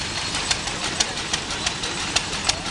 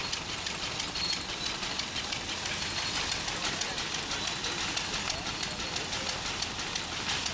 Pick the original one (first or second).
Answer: second